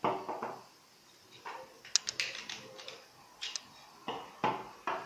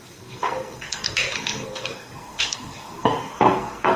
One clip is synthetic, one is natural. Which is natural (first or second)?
first